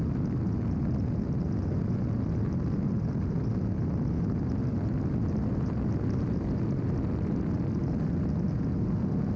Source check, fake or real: real